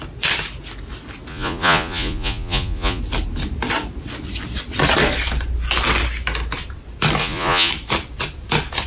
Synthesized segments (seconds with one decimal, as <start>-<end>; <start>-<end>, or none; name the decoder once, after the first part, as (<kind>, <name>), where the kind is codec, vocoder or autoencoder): 1.3-3.0 (vocoder, Vocos); 7.2-7.7